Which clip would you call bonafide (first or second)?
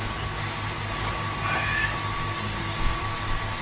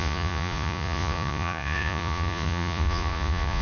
first